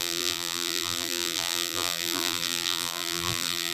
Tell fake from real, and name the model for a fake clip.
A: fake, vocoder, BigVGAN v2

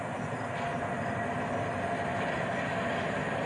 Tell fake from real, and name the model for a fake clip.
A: real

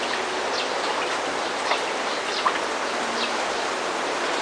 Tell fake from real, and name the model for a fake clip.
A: real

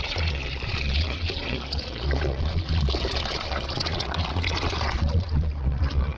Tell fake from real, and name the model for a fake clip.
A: fake, vocoder, Vocos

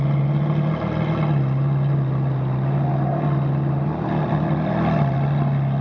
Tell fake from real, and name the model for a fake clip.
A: real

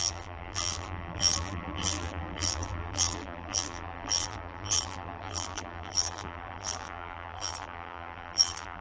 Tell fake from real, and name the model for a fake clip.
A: fake, vocoder, BigVGAN v2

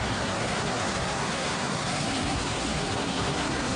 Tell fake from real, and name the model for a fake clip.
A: fake, codec, SNAC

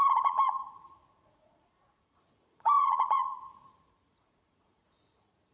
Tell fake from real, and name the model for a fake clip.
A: fake, vocoder, Vocos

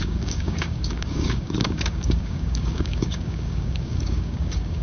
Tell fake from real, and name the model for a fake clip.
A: fake, codec, DAC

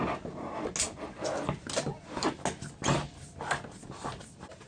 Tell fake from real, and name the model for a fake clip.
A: real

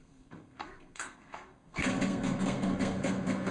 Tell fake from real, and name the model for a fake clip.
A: fake, codec, SNAC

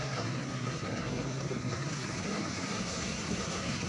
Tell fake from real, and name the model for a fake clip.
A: fake, codec, SNAC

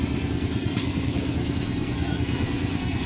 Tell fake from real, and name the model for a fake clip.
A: fake, codec, SNAC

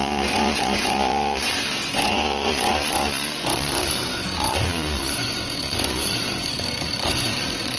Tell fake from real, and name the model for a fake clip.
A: fake, vocoder, Vocos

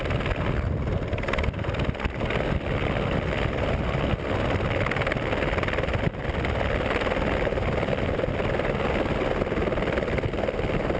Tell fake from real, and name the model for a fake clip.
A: real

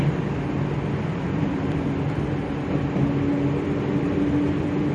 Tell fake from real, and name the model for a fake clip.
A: real